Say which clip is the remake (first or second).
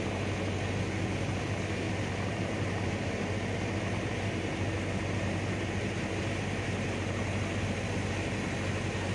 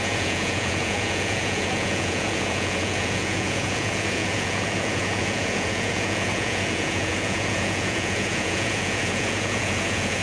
second